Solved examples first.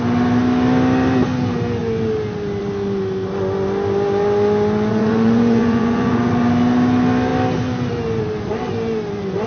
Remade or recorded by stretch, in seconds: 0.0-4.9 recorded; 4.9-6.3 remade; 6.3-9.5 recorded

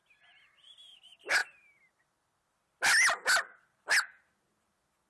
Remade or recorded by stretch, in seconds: 0.0-5.1 recorded

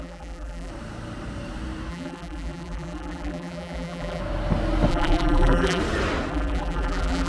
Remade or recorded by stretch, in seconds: 0.0-0.7 remade; 0.7-1.9 recorded; 1.9-4.2 remade; 4.2-4.9 recorded; 4.9-5.8 remade; 5.8-6.3 recorded; 6.3-7.3 remade

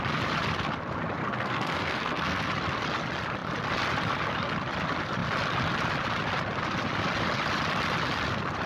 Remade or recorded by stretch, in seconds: 0.0-1.2 recorded; 1.2-2.5 remade; 2.5-8.7 recorded

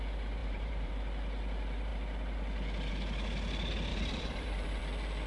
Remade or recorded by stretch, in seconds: 0.0-0.4 recorded; 0.4-0.9 remade; 0.9-3.9 recorded; 3.9-4.8 remade; 4.8-5.3 recorded

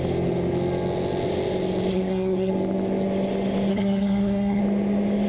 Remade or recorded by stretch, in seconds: 0.0-1.9 recorded; 1.9-2.5 remade; 2.5-3.7 recorded; 3.7-4.6 remade; 4.6-5.3 recorded

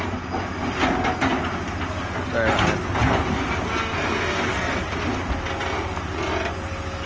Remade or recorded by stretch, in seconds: 0.0-7.1 recorded